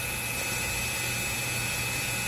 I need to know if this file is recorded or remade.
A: recorded